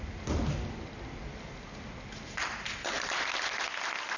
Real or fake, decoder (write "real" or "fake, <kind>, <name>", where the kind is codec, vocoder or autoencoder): real